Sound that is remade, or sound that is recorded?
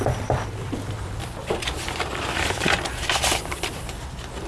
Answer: remade